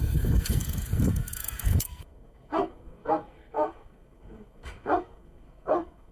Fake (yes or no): yes